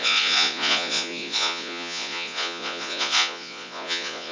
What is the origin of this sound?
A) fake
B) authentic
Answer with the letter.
A